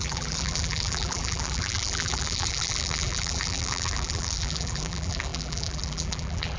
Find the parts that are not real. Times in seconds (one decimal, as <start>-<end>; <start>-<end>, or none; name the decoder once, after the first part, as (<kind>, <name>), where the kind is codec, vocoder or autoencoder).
0.0-6.6 (vocoder, BigVGAN v2)